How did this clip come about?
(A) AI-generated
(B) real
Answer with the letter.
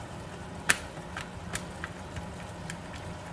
B